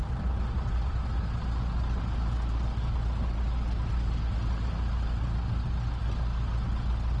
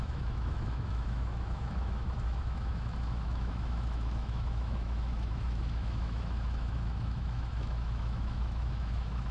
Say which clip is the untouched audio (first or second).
first